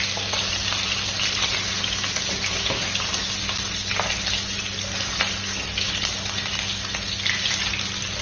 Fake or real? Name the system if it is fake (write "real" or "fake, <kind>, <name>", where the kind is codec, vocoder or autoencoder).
real